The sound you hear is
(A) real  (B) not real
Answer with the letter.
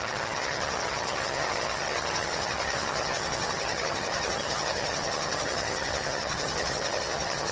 B